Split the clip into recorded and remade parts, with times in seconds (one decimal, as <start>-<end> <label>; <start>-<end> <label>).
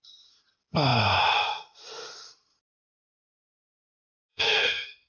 0.0-4.3 recorded; 4.3-5.1 remade